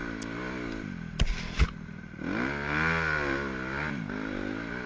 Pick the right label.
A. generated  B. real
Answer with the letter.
B